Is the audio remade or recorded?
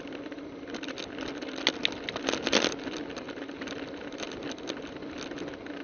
recorded